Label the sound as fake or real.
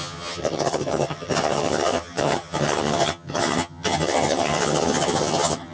fake